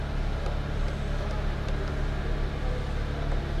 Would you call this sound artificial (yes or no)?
no